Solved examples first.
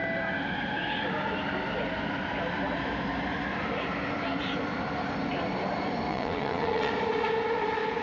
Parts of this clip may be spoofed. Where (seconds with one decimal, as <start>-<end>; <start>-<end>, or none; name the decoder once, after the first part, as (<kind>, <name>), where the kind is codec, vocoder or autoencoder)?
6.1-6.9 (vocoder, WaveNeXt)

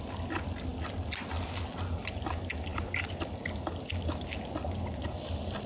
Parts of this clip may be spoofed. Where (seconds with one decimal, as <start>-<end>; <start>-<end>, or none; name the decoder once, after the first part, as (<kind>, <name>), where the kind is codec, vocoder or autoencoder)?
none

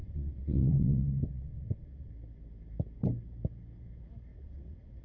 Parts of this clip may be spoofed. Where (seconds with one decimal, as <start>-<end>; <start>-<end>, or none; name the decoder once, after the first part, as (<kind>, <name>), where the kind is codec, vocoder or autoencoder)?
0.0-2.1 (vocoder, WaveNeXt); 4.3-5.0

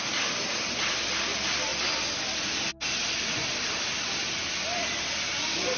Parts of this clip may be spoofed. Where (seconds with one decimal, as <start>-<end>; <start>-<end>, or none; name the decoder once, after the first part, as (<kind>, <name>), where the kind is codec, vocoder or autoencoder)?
none